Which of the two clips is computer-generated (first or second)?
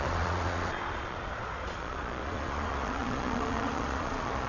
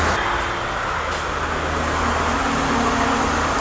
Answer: first